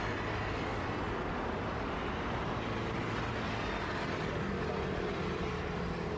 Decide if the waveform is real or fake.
real